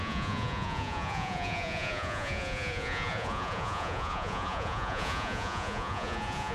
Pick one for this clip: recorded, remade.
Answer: remade